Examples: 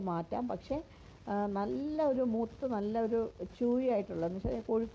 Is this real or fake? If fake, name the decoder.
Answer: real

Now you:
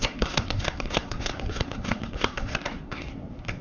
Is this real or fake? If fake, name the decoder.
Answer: fake, codec, SNAC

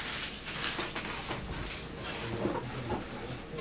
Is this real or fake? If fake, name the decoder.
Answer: real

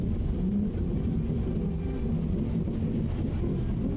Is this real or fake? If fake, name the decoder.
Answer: real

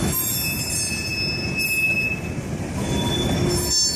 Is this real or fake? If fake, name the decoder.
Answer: real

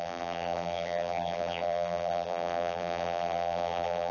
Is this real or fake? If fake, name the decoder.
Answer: fake, vocoder, BigVGAN v2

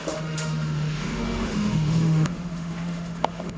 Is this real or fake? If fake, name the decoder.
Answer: fake, autoencoder, DAC-VAE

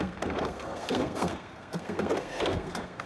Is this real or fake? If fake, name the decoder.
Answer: fake, codec, SNAC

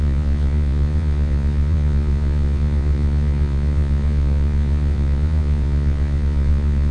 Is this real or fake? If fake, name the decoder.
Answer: fake, vocoder, Vocos